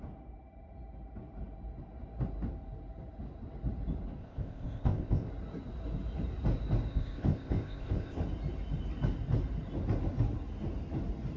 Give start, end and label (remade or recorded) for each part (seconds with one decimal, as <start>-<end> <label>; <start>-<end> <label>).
0.0-4.2 recorded; 4.2-5.3 remade; 5.3-6.9 recorded; 6.9-8.2 remade; 8.2-11.4 recorded